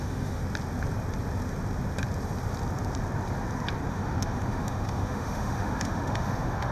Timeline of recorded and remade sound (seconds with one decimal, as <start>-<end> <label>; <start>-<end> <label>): 0.0-0.4 remade; 0.4-3.9 recorded; 3.9-6.7 remade